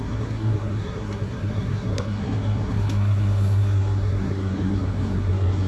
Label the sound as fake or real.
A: fake